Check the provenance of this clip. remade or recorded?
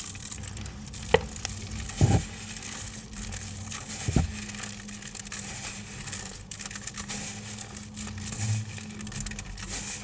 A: recorded